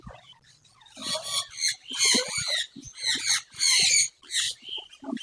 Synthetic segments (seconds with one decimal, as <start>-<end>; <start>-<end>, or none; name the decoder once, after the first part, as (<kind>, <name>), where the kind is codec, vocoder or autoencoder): 0.0-1.0 (vocoder, BigVGAN v2); 4.1-5.2

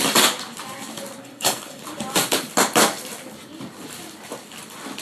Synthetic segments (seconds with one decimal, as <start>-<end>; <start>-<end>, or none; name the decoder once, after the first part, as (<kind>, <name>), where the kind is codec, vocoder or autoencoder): 1.2-1.8 (codec, SNAC)